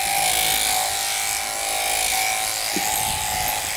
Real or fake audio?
real